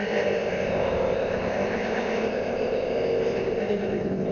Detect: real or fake fake